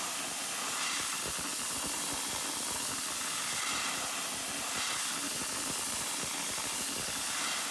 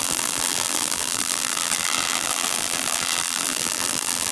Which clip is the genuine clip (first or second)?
first